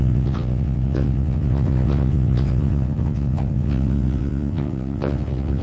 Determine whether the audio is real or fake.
fake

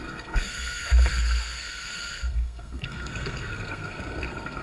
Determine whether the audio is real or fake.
fake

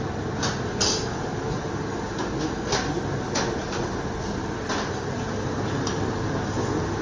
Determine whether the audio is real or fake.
real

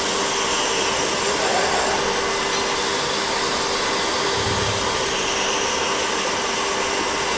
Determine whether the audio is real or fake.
real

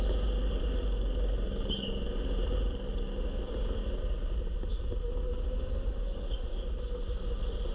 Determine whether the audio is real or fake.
real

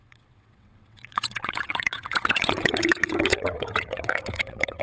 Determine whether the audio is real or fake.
fake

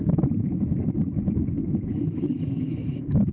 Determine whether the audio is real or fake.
fake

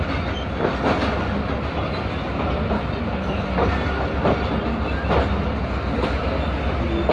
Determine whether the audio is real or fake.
real